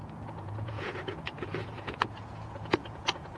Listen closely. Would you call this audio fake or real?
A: fake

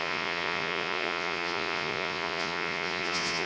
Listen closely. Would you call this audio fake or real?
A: fake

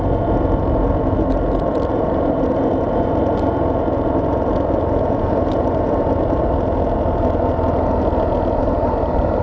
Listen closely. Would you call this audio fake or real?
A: real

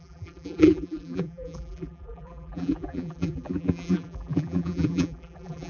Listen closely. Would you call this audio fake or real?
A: fake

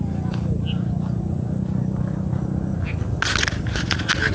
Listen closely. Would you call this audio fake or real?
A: real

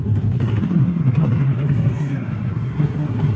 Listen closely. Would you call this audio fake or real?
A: fake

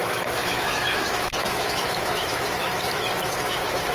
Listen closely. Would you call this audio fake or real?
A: fake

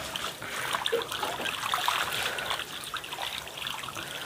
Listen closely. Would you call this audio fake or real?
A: real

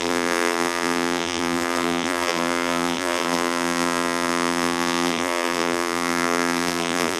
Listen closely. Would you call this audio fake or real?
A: fake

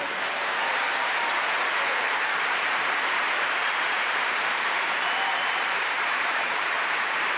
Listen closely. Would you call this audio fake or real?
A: fake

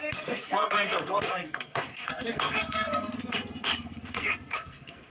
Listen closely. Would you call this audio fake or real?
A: fake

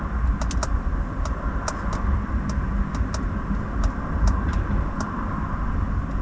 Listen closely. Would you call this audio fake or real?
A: real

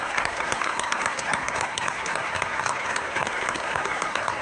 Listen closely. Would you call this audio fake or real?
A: fake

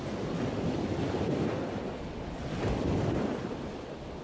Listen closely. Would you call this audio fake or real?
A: real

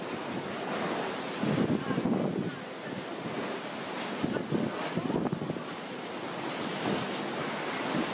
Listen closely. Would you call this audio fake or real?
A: real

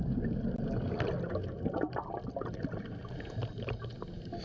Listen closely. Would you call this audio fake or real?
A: real